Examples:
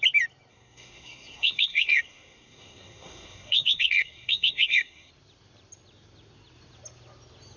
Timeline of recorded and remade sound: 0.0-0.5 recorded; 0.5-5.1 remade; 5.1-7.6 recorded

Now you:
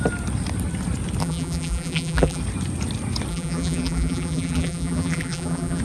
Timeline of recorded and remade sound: 0.0-1.2 recorded; 1.2-2.4 remade; 2.4-3.3 recorded; 3.3-5.8 remade

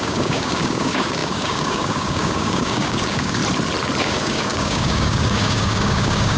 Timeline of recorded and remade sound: 0.0-3.4 remade; 3.4-4.0 recorded; 4.0-6.4 remade